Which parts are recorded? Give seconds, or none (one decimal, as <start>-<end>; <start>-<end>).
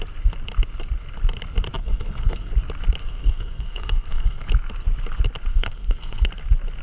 0.0-1.8; 2.5-3.0; 4.5-5.5; 6.3-6.8